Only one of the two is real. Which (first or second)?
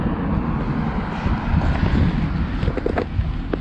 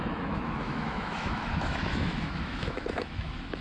first